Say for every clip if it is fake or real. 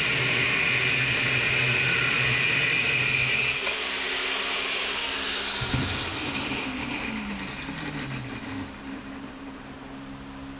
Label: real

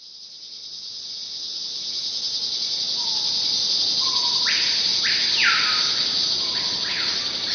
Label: real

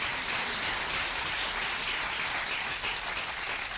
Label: real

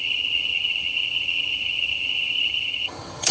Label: fake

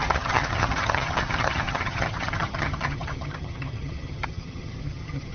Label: fake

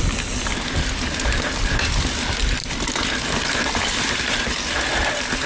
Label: real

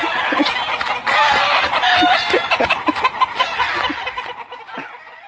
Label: real